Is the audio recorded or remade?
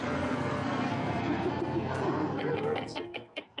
remade